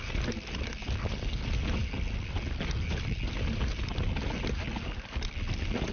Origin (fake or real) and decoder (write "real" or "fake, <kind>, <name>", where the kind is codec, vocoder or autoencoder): real